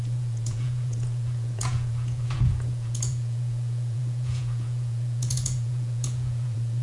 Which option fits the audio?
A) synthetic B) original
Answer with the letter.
A